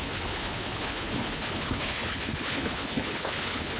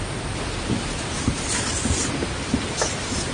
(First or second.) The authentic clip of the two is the second